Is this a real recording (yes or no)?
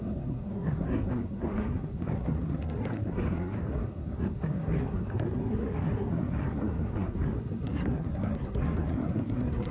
no